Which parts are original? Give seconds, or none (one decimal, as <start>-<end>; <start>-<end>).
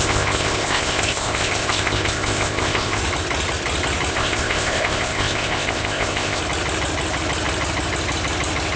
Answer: 3.0-4.1; 6.4-8.8